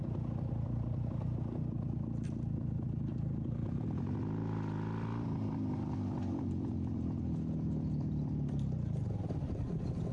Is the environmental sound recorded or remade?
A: recorded